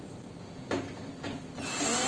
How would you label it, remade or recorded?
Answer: recorded